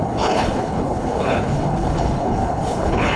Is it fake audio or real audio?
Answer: fake